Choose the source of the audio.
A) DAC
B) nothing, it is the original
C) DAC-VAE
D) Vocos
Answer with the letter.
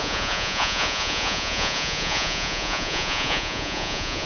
D